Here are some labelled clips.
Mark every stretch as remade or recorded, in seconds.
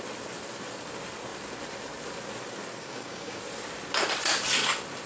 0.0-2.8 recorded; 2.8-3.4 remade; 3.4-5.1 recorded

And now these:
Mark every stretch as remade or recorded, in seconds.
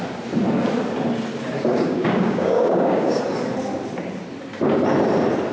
0.0-1.7 recorded; 1.7-3.2 remade; 3.2-5.5 recorded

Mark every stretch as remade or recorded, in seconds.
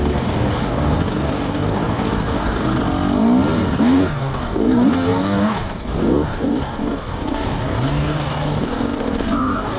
0.0-2.7 remade; 2.7-3.8 recorded; 3.8-9.8 remade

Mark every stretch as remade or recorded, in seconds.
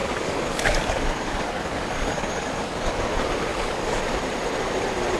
0.0-3.1 remade; 3.1-3.5 recorded; 3.5-4.0 remade; 4.0-5.2 recorded